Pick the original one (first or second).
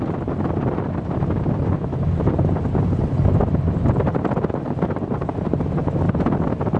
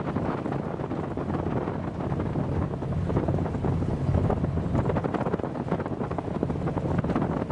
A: second